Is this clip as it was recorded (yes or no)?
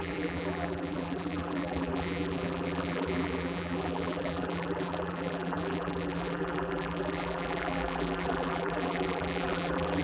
no